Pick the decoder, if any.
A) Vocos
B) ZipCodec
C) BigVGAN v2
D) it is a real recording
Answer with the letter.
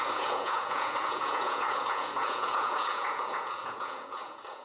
A